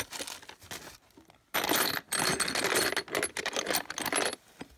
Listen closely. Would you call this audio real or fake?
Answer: real